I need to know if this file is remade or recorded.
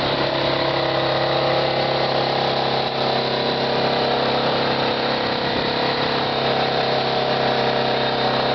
recorded